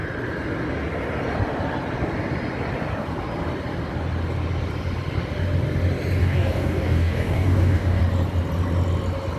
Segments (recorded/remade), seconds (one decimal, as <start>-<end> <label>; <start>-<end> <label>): 0.0-6.2 recorded; 6.2-8.0 remade; 8.0-9.4 recorded